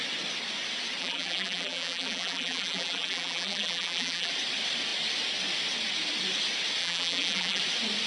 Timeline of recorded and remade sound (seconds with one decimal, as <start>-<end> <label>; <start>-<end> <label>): 0.0-1.0 recorded; 1.0-4.3 remade; 4.3-6.8 recorded; 6.8-7.6 remade; 7.6-8.1 recorded

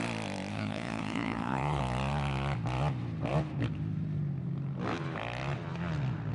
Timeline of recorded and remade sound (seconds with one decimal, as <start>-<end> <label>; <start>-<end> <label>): 0.0-0.5 recorded; 0.5-1.8 remade; 1.8-6.3 recorded

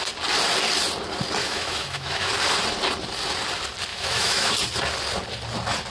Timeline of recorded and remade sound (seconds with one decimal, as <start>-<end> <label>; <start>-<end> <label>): 0.0-1.4 recorded; 1.4-2.3 remade; 2.3-3.9 recorded; 3.9-4.5 remade; 4.5-5.9 recorded